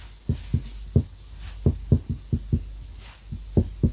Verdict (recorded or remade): recorded